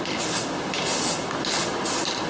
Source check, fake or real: real